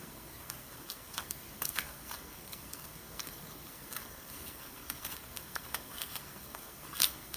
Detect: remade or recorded remade